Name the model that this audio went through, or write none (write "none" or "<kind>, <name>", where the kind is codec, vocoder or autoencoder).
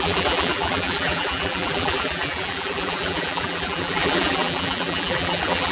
vocoder, BigVGAN v2